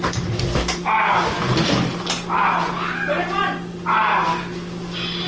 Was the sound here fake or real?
real